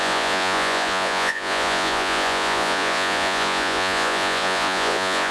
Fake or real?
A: fake